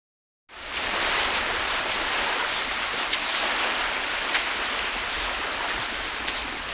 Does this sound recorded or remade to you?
recorded